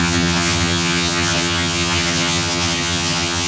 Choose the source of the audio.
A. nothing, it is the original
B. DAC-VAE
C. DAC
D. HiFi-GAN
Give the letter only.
D